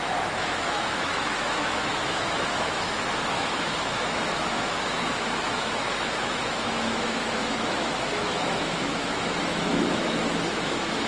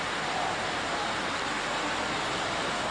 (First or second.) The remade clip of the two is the first